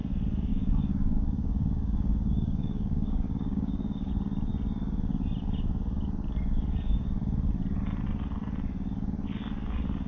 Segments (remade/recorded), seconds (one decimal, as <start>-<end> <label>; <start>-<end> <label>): 0.0-0.5 recorded; 0.5-4.1 remade; 4.1-10.1 recorded